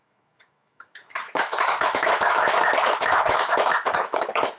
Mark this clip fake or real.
fake